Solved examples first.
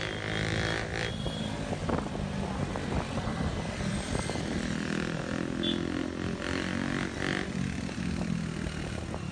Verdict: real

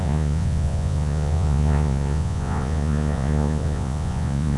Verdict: fake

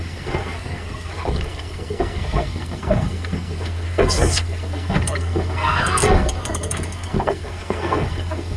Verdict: fake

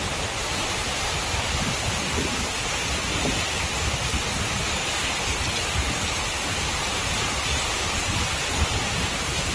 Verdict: real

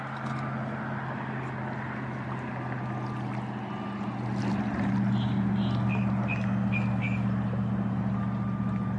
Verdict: real